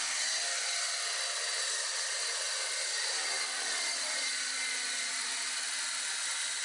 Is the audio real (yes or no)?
yes